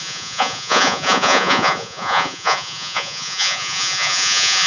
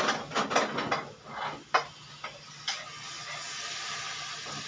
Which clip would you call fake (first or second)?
first